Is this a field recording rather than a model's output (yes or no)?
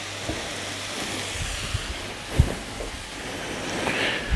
yes